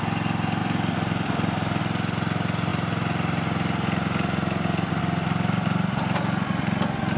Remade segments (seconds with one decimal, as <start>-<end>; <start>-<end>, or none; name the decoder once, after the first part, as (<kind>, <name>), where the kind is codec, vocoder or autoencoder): 0.6-1.8 (vocoder, BigVGAN v2)